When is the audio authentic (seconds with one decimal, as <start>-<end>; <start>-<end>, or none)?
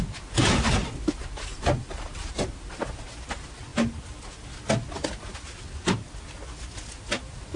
0.0-1.5; 2.3-7.6